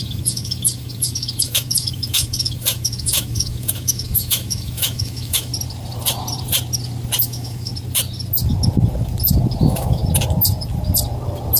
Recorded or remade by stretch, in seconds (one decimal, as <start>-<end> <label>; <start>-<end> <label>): 0.0-5.5 remade; 5.5-7.2 recorded; 7.2-7.7 remade; 7.7-9.6 recorded; 9.6-10.0 remade; 10.0-11.6 recorded